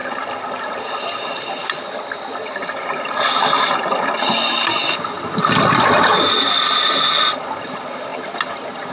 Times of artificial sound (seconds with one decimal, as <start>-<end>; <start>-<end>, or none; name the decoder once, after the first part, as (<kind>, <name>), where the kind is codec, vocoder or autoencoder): 0.0-4.2 (vocoder, BigVGAN v2)